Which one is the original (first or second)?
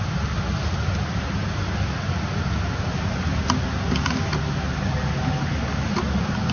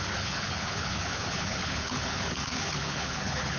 first